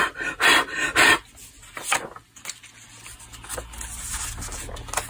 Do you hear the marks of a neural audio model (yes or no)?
no